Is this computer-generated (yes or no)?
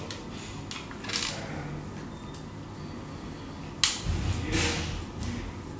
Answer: no